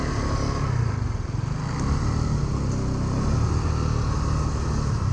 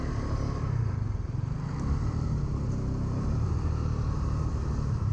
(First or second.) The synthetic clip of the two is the second